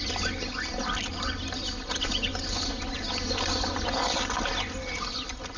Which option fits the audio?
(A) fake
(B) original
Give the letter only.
B